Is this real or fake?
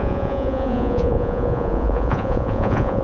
fake